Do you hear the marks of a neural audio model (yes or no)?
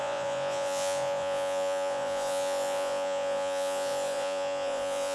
yes